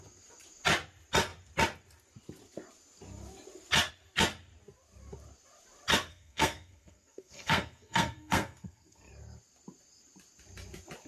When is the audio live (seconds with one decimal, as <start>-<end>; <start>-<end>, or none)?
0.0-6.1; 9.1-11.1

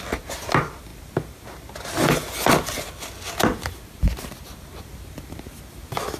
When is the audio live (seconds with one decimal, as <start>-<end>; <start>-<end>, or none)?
0.0-6.2

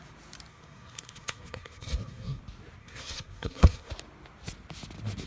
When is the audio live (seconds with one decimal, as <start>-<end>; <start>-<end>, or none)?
0.0-0.5; 2.4-2.8; 3.9-5.3

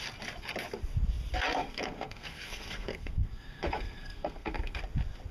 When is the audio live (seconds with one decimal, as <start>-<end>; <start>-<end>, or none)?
0.0-1.6; 4.8-5.3

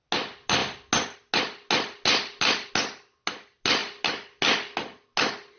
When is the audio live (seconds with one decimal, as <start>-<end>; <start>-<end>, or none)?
0.0-5.6

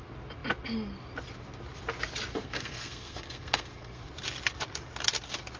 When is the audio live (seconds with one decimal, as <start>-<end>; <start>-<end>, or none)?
0.0-2.3; 4.0-5.6

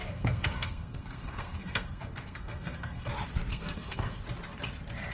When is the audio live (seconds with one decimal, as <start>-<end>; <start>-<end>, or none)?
3.1-3.5; 4.2-5.1

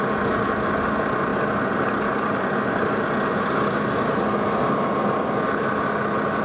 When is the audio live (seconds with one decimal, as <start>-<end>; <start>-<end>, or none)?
0.0-6.4